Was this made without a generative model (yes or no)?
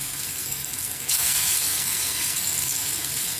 no